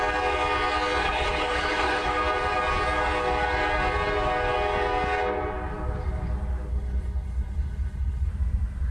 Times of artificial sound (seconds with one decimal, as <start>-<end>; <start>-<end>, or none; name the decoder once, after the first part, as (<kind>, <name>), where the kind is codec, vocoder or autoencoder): 1.0-2.1 (codec, HILCodec); 6.7-8.3